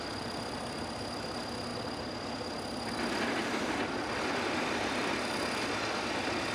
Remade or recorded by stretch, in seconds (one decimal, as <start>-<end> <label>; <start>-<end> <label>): 0.0-6.5 recorded